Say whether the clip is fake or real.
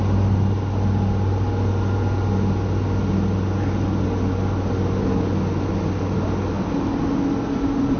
real